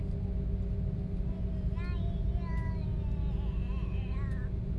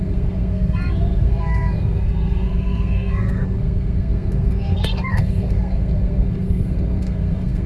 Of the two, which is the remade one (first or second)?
second